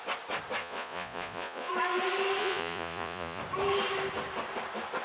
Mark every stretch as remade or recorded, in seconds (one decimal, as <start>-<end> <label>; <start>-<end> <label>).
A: 0.0-0.6 recorded; 0.6-1.7 remade; 1.7-2.4 recorded; 2.4-3.4 remade; 3.4-5.0 recorded